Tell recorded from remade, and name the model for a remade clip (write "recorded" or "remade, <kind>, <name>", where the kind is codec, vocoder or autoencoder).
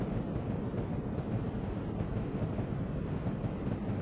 recorded